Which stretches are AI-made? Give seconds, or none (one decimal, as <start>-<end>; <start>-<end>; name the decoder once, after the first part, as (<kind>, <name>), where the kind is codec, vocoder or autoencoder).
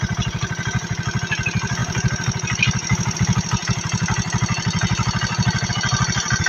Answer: none